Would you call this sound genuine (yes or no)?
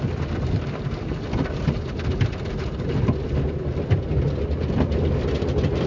yes